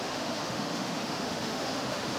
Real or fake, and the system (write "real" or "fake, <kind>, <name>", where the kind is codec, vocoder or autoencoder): fake, autoencoder, DAC-VAE